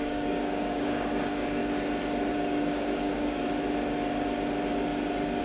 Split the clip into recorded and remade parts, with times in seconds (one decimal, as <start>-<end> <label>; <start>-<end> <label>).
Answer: 0.0-1.6 remade; 1.6-2.3 recorded; 2.3-3.4 remade; 3.4-5.4 recorded